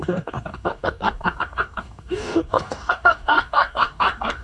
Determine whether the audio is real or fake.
fake